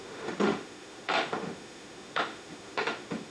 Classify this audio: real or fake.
fake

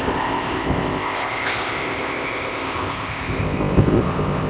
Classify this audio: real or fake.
fake